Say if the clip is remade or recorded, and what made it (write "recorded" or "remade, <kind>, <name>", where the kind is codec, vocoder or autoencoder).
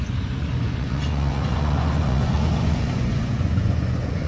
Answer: remade, vocoder, Vocos